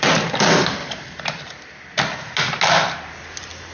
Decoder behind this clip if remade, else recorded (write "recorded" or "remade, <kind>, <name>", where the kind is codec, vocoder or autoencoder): recorded